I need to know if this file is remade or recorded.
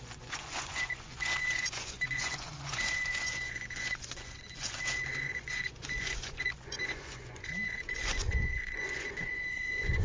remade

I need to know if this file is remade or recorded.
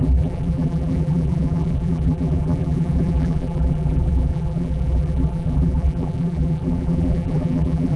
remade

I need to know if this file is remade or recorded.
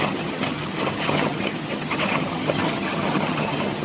remade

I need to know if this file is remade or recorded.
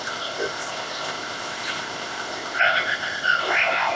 remade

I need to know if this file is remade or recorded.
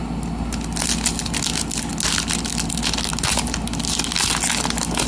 recorded